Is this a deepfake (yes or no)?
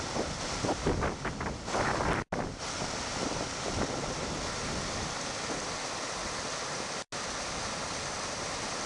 no